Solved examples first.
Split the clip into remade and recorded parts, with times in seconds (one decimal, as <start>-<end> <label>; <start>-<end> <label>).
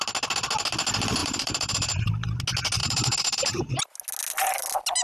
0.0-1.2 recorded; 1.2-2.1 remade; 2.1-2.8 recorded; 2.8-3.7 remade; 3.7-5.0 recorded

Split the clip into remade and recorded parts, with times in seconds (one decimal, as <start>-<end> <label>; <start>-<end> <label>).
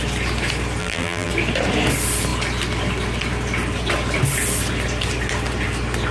0.0-0.8 recorded; 0.8-1.3 remade; 1.3-6.1 recorded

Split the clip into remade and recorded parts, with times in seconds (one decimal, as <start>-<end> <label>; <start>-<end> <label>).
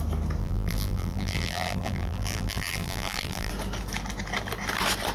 0.0-0.4 recorded; 0.4-3.5 remade; 3.5-5.1 recorded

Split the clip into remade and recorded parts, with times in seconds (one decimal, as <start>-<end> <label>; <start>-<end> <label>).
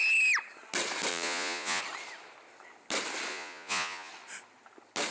0.0-1.1 recorded; 1.1-1.8 remade; 1.8-3.3 recorded; 3.3-4.1 remade; 4.1-5.1 recorded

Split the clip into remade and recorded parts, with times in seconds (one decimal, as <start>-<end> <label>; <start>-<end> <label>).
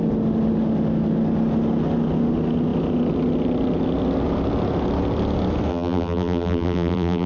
0.0-5.7 recorded; 5.7-7.3 remade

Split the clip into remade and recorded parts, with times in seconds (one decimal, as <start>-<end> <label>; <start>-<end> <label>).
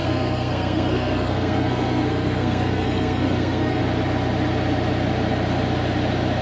0.0-3.8 remade; 3.8-6.4 recorded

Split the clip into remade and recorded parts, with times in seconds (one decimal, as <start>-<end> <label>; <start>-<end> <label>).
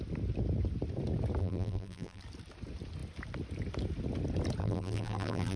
0.0-1.4 recorded; 1.4-2.2 remade; 2.2-4.6 recorded; 4.6-5.6 remade